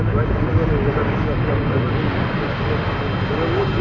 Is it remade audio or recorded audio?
recorded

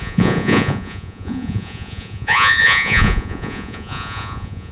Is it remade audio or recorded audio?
remade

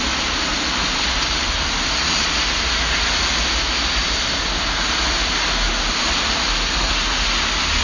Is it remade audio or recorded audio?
recorded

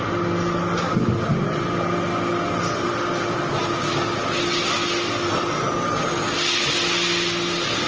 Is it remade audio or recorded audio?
recorded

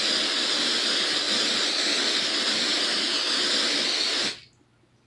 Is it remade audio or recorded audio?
recorded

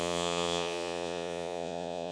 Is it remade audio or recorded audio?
remade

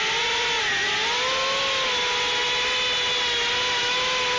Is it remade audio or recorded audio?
recorded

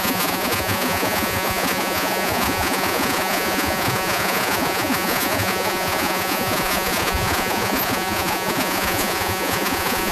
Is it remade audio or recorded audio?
remade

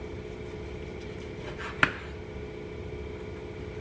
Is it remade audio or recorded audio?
recorded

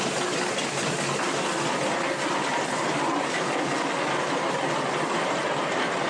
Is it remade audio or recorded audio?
recorded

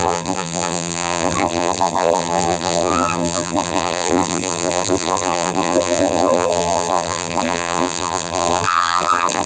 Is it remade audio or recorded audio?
remade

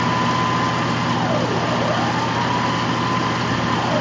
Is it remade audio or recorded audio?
recorded